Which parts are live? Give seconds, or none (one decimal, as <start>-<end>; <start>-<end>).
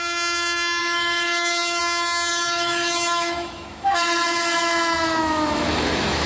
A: 0.0-0.8; 1.8-2.3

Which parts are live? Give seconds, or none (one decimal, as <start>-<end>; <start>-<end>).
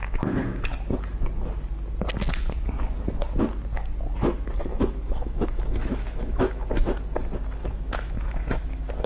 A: 0.6-4.7; 6.7-7.6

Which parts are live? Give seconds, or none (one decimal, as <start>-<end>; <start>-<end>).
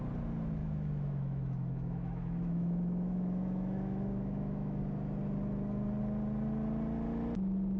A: 0.0-0.6; 4.8-7.8